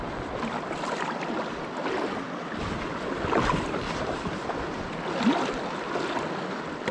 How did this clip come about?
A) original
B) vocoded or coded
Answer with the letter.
A